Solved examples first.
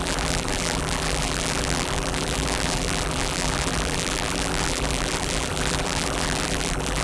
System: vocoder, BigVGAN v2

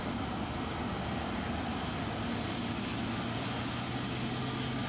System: none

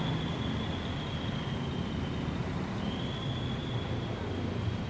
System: none